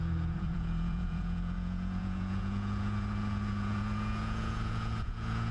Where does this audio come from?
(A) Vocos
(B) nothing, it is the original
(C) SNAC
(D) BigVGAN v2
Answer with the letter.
A